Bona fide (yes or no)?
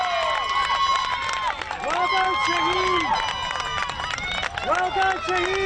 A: yes